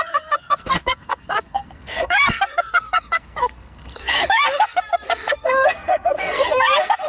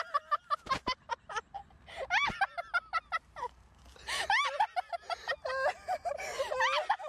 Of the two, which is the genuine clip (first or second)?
second